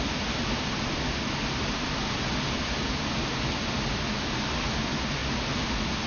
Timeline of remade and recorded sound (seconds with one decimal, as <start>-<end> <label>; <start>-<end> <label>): 0.0-6.1 recorded